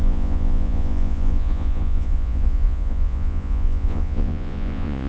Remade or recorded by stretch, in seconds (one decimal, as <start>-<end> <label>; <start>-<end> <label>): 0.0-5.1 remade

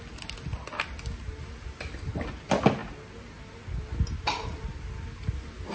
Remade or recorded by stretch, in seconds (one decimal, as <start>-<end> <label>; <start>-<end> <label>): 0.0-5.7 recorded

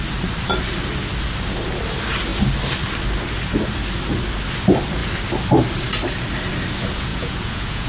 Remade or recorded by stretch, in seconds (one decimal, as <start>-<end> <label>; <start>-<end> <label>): 0.0-7.1 recorded; 7.1-7.9 remade

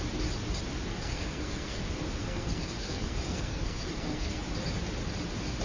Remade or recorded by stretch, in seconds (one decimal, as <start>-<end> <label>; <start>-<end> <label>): 0.0-0.9 recorded; 0.9-1.8 remade; 1.8-2.2 recorded; 2.2-4.4 remade; 4.4-5.6 recorded